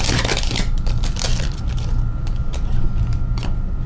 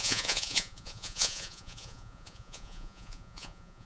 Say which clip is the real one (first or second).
first